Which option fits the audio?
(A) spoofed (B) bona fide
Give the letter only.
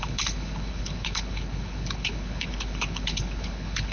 A